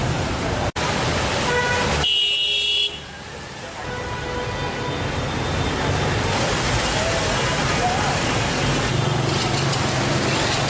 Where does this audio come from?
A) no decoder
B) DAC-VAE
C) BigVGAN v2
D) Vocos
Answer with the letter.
A